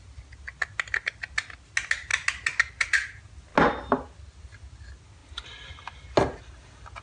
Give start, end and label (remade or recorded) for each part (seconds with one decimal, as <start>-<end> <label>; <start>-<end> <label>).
0.0-7.0 recorded